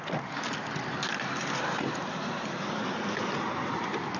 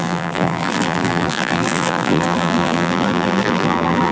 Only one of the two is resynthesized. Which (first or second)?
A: second